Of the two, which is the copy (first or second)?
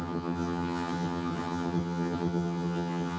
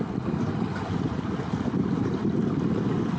first